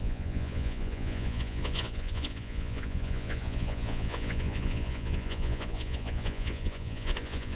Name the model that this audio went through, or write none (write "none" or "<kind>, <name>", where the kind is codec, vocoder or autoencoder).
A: vocoder, Vocos